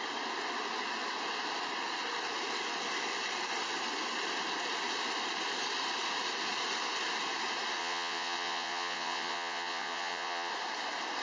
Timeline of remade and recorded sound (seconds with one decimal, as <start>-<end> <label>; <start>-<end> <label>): 0.0-7.8 recorded; 7.8-10.5 remade; 10.5-11.2 recorded